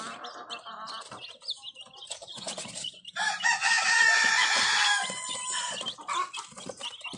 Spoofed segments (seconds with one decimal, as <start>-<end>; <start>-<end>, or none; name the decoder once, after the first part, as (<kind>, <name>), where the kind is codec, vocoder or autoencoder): 2.2-5.7 (vocoder, Vocos)